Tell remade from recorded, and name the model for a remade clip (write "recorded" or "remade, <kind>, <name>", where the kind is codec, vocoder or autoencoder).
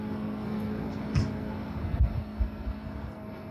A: remade, codec, SNAC